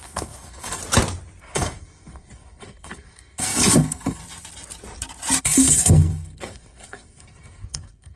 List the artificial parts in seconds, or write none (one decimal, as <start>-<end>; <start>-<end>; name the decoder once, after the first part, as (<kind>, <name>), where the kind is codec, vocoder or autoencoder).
0.0-0.8 (codec, SNAC); 1.4-4.2; 5.4-8.2